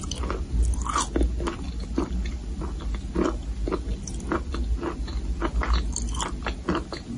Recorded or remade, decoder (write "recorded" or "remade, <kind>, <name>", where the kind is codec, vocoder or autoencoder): recorded